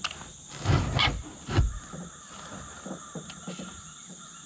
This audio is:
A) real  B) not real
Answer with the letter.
A